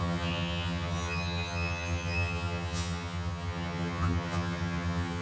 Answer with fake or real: fake